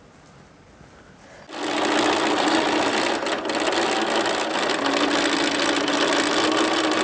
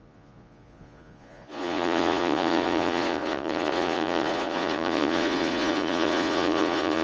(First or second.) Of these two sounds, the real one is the first